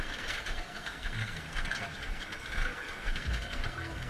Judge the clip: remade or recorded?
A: remade